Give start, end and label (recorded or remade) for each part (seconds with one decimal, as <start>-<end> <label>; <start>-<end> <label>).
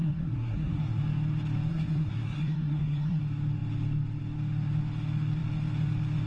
0.0-1.0 remade; 1.0-1.7 recorded; 1.7-3.2 remade; 3.2-6.3 recorded